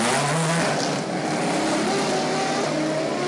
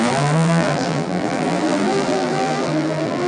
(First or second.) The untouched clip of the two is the first